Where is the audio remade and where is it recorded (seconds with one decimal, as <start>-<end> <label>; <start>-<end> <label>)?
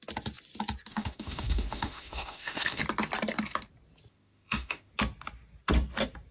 0.0-0.9 recorded; 0.9-2.8 remade; 2.8-4.1 recorded; 4.1-4.9 remade; 4.9-6.3 recorded